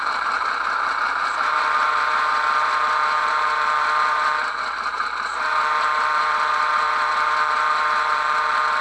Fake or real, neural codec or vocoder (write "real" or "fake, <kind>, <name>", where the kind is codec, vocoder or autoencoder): fake, vocoder, BigVGAN v2